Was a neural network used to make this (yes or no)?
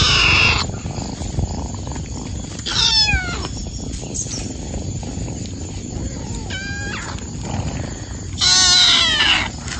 no